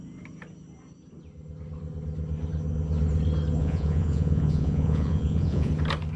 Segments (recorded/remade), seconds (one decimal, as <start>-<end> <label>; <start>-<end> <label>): 0.0-3.6 recorded; 3.6-5.7 remade; 5.7-6.2 recorded